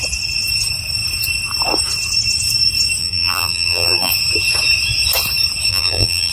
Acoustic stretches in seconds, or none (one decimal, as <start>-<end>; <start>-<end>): 0.0-3.0; 4.1-5.7